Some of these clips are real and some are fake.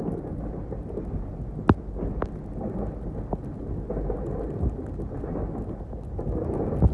real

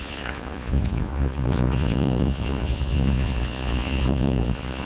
fake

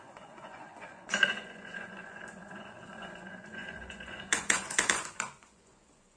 fake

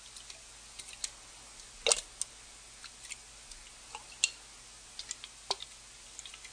real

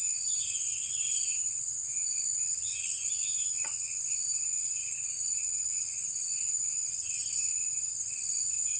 fake